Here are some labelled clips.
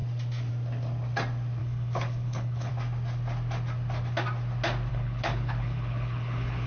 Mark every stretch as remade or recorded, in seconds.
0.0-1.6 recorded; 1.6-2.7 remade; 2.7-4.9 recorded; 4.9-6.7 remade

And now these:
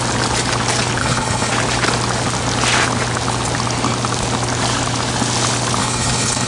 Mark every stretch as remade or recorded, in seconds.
0.0-1.0 recorded; 1.0-1.5 remade; 1.5-5.8 recorded; 5.8-6.5 remade

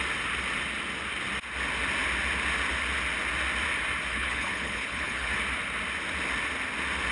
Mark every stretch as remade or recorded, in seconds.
0.0-4.1 recorded; 4.1-5.3 remade; 5.3-7.1 recorded

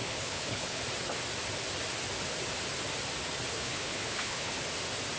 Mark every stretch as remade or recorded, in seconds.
0.0-0.8 remade; 0.8-3.5 recorded; 3.5-4.6 remade; 4.6-5.2 recorded

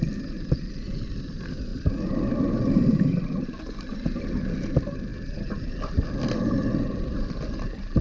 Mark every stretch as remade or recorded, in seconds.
0.0-8.0 recorded